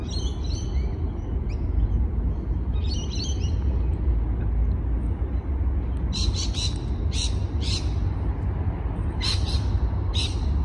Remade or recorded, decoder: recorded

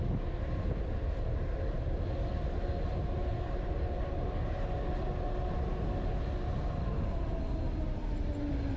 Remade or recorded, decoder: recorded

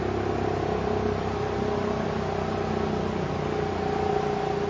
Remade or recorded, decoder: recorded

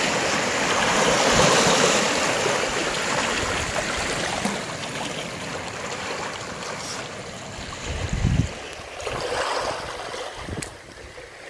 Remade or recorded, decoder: recorded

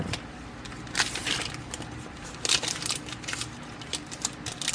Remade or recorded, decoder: recorded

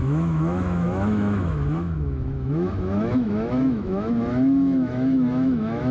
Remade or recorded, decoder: remade, autoencoder, DAC-VAE